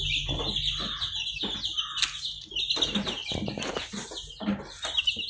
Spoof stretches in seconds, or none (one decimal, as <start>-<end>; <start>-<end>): none